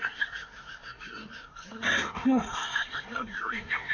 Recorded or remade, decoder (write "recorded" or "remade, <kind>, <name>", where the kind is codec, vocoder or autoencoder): remade, codec, SNAC